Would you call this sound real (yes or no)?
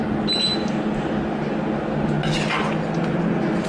yes